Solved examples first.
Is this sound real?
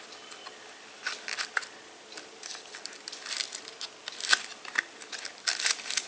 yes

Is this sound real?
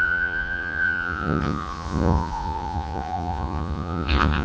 no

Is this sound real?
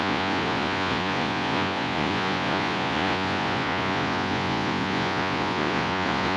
no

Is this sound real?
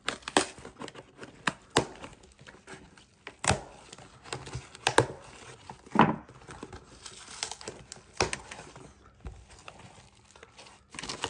yes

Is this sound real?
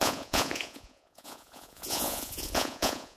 no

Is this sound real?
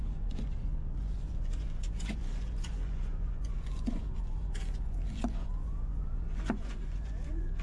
no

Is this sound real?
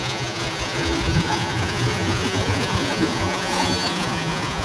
no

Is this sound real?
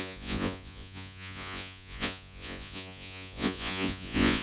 no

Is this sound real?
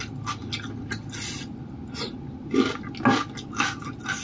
yes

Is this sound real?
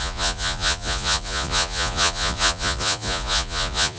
no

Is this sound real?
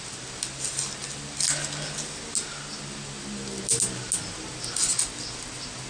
yes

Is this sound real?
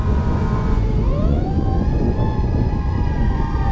no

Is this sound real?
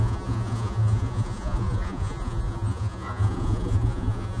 no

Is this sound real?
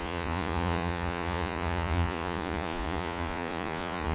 no